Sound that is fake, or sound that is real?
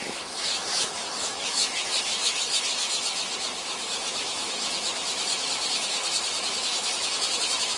fake